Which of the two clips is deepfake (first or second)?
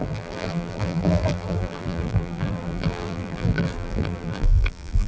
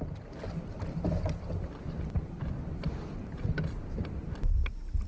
first